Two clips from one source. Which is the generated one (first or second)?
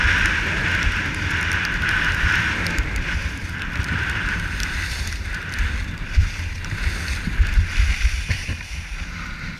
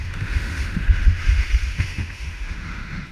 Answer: second